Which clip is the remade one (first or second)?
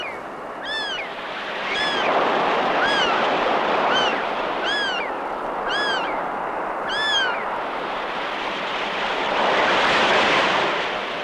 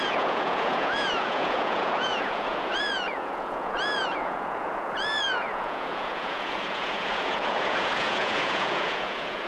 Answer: second